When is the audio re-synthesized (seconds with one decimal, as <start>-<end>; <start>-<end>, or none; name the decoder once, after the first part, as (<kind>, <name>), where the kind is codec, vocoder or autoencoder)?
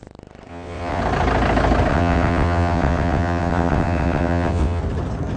0.5-1.0 (vocoder, WaveNeXt); 1.9-4.8